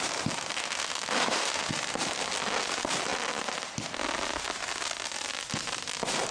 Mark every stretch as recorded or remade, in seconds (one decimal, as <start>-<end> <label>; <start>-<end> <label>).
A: 0.0-0.6 recorded; 0.6-1.6 remade; 1.6-6.3 recorded